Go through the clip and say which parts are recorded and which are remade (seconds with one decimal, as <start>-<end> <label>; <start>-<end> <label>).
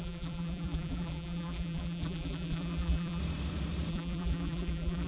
0.0-3.2 remade; 3.2-3.9 recorded; 3.9-5.1 remade